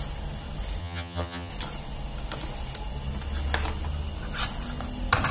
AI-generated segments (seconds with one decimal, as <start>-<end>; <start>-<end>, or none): 0.8-1.5